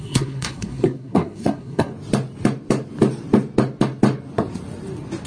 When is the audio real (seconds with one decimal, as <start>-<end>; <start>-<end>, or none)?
1.9-5.3